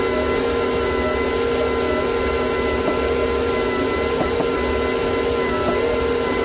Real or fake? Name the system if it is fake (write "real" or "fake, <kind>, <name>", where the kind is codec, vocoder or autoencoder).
real